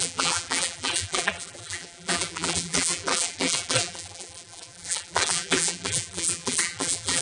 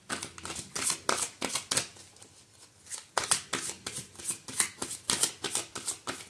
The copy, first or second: first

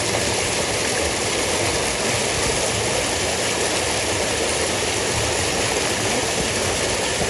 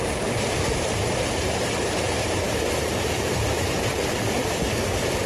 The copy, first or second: second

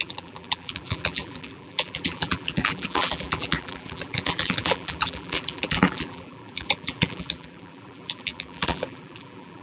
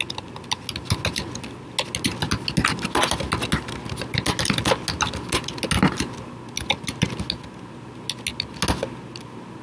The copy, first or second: first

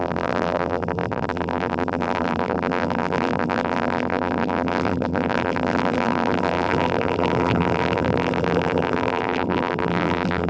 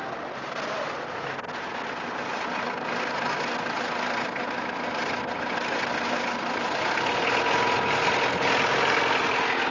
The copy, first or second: first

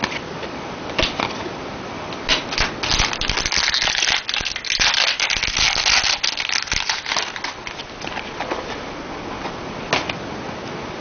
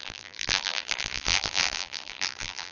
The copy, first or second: second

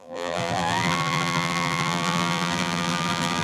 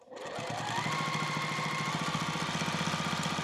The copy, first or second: first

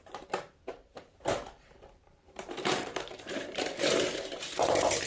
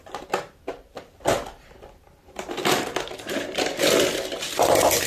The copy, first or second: first